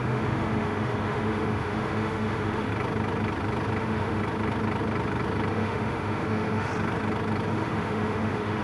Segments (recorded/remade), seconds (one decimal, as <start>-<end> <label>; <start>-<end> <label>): 0.0-2.7 remade; 2.7-3.8 recorded; 3.8-4.2 remade; 4.2-5.5 recorded; 5.5-6.7 remade; 6.7-7.5 recorded; 7.5-8.6 remade